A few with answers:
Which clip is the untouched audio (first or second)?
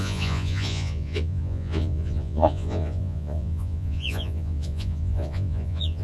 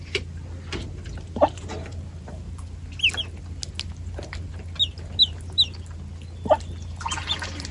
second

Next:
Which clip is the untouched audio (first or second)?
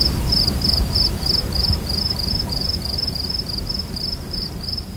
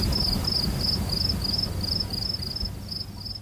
second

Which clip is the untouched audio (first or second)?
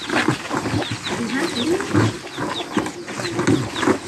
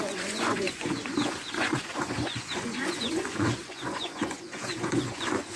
first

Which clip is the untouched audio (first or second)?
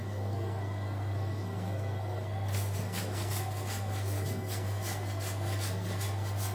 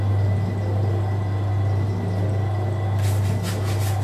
second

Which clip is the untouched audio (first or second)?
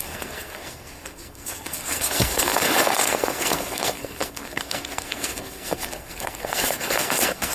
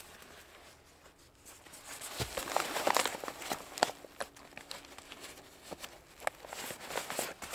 second